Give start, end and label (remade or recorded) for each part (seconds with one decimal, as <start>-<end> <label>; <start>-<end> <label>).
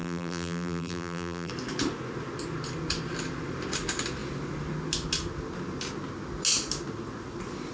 0.0-1.5 remade; 1.5-7.7 recorded